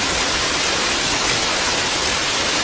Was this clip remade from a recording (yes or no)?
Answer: no